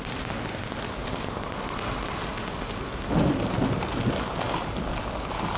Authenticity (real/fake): real